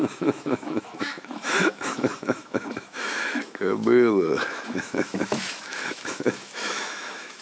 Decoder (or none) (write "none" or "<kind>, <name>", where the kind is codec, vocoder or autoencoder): autoencoder, DAC-VAE